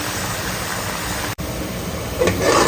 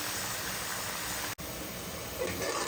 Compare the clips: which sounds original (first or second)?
second